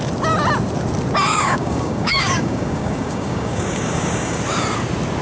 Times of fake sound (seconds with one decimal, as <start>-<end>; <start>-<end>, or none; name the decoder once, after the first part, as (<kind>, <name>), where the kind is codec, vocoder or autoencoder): 1.3-4.4 (codec, DAC)